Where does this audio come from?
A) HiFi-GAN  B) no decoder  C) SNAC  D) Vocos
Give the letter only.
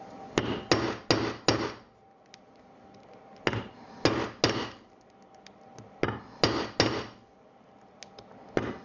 B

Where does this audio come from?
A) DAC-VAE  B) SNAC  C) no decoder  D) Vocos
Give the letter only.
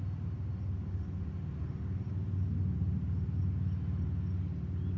C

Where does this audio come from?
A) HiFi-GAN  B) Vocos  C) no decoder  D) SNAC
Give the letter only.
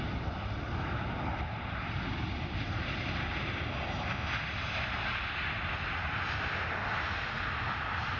C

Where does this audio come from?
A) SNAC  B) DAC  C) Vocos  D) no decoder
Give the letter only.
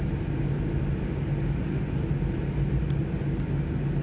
D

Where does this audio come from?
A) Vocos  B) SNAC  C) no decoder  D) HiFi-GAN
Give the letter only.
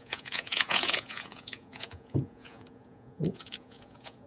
A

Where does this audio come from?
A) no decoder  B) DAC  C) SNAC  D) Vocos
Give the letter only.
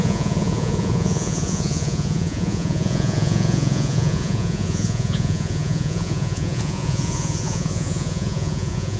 D